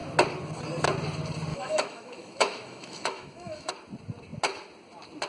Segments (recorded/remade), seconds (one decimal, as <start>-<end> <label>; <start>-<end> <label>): 0.0-1.5 recorded; 1.5-3.7 remade; 3.7-5.3 recorded